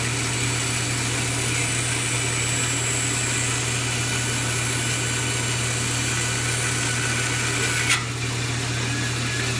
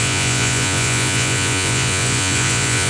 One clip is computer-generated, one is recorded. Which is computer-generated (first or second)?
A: second